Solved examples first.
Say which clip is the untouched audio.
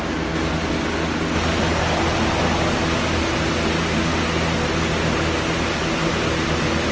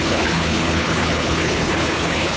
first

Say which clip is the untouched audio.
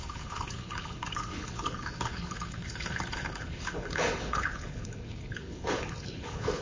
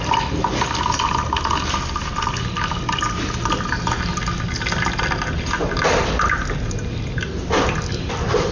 second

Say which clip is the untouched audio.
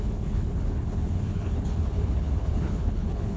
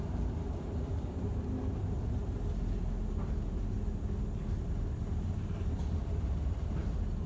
second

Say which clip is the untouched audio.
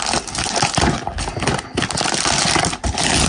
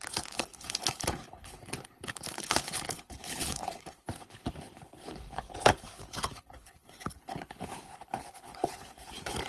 first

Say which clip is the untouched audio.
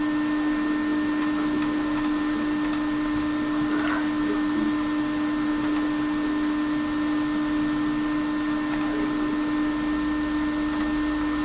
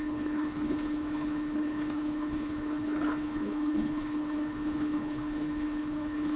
first